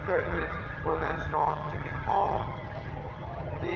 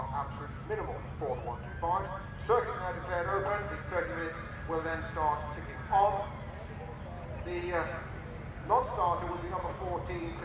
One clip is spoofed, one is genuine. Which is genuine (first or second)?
second